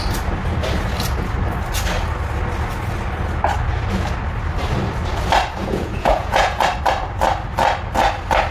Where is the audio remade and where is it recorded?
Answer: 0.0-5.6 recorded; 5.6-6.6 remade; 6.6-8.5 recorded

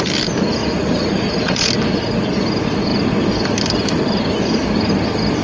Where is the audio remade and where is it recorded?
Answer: 0.0-0.6 recorded; 0.6-1.7 remade; 1.7-5.4 recorded

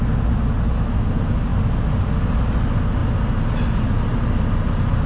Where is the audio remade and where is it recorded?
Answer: 0.0-5.1 recorded

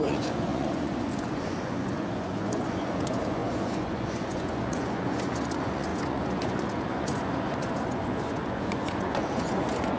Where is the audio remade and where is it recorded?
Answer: 0.0-10.0 remade

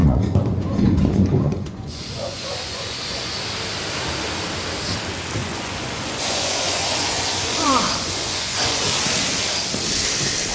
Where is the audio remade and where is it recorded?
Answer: 0.0-3.3 remade; 3.3-5.4 recorded; 5.4-8.8 remade; 8.8-10.5 recorded

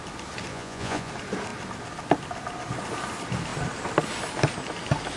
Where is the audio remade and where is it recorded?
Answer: 0.0-0.5 recorded; 0.5-1.1 remade; 1.1-5.2 recorded

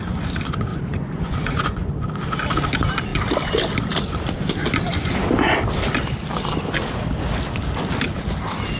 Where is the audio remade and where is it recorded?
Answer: 0.0-0.7 recorded; 0.7-1.9 remade; 1.9-8.8 recorded